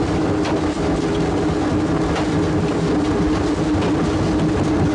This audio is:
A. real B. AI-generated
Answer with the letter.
A